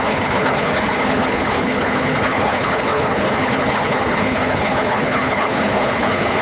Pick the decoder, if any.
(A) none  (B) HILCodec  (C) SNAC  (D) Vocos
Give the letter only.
B